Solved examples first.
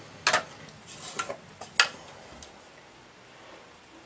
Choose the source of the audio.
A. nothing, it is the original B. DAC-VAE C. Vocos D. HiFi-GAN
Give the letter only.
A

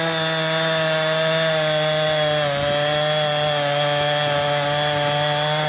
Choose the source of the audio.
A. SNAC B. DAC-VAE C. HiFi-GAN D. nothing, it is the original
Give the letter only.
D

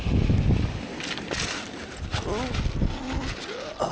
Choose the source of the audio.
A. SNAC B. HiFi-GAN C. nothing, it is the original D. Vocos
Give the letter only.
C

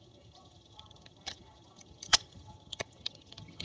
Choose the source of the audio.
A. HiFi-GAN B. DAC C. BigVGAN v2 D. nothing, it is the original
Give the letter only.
A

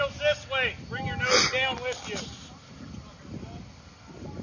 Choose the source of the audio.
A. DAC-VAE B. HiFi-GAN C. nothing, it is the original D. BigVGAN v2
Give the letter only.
C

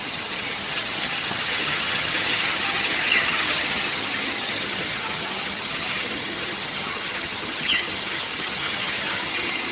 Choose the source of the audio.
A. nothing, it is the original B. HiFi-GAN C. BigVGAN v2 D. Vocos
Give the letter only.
B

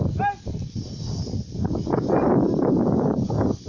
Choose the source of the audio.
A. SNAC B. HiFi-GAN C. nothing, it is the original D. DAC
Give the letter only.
C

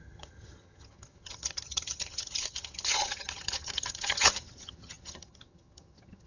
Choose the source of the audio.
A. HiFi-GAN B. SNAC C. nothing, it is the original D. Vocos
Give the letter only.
A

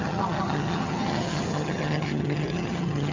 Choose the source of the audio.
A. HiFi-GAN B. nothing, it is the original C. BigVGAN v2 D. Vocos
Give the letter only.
A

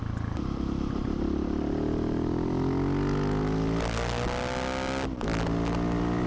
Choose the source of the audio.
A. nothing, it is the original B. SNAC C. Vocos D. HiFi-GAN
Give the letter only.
A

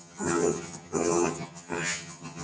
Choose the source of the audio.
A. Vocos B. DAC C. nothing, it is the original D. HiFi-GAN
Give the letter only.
D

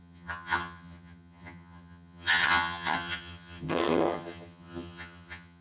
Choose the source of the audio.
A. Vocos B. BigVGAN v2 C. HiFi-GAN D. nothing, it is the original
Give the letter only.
C